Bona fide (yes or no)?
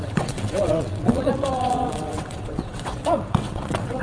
no